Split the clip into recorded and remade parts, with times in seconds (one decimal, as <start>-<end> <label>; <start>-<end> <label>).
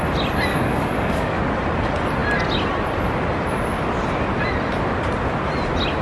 0.0-0.5 recorded; 0.5-1.4 remade; 1.4-6.0 recorded